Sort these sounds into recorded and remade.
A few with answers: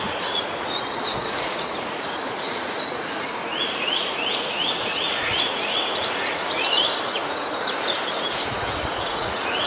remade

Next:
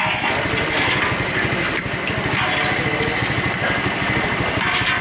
recorded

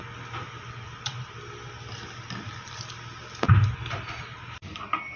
recorded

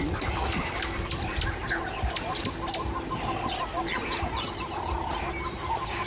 recorded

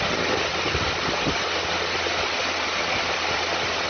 recorded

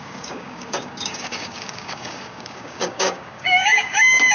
remade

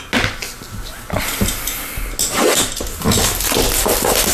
recorded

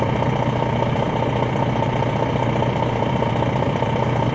remade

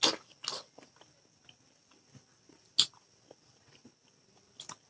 recorded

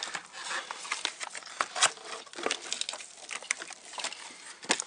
recorded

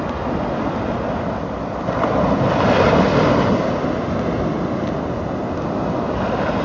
recorded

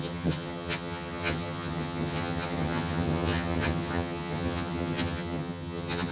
remade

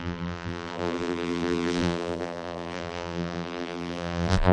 remade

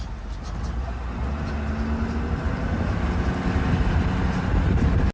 recorded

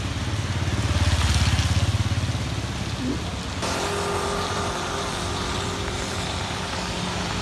recorded